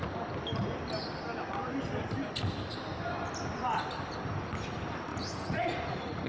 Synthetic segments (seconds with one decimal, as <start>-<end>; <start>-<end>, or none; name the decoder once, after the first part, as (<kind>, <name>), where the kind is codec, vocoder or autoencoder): 5.1-6.3 (vocoder, Vocos)